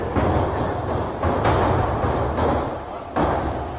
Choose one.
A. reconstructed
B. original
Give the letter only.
B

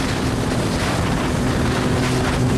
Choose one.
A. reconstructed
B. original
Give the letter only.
B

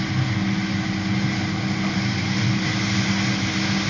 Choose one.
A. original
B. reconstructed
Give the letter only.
A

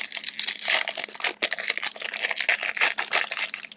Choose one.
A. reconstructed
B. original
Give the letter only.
B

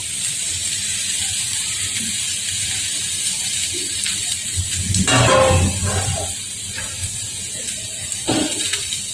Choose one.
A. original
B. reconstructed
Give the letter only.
B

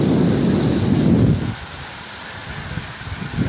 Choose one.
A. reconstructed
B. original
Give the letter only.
B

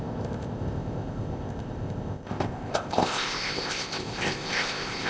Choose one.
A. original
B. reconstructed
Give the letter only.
B